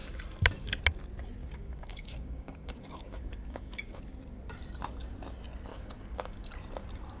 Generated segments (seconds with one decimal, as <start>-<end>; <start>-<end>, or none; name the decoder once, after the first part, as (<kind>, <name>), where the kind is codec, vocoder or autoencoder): 1.4-4.0 (codec, DAC); 5.7-6.5